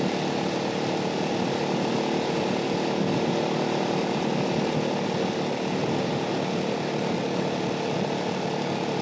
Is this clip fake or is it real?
real